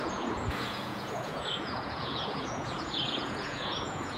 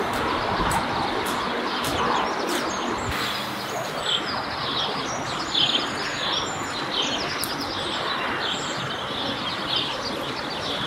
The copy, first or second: first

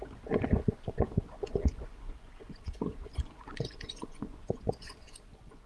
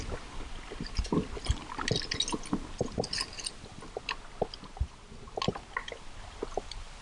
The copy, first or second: first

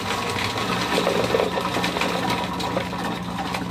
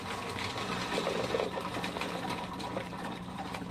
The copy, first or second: second